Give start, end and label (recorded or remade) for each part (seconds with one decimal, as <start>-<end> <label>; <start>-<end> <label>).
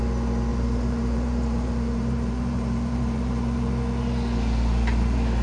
0.0-0.5 recorded; 0.5-3.7 remade; 3.7-5.4 recorded